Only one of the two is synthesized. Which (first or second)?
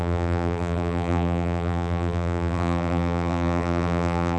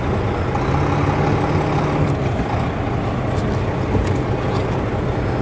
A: first